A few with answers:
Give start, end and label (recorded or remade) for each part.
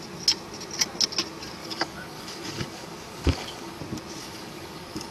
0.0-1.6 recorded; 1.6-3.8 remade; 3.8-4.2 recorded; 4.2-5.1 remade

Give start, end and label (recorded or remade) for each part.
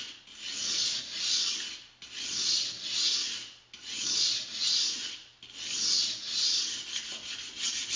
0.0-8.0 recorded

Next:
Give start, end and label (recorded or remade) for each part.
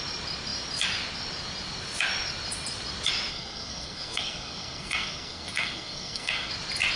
0.0-3.3 recorded; 3.3-6.5 remade; 6.5-7.0 recorded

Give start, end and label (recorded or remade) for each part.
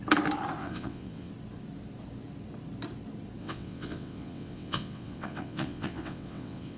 0.0-0.6 recorded; 0.6-1.3 remade; 1.3-3.4 recorded; 3.4-6.8 remade